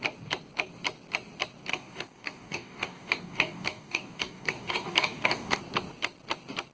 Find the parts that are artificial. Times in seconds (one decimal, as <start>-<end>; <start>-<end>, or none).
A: 1.7-5.6